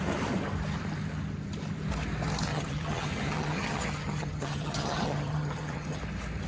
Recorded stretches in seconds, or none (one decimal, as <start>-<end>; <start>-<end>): 0.0-2.5; 6.0-6.5